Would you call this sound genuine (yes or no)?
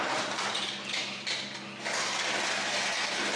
yes